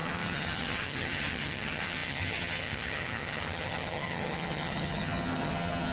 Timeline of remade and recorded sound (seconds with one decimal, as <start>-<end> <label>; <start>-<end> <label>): 0.0-5.9 remade